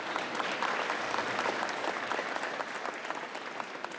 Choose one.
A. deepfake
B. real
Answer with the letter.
B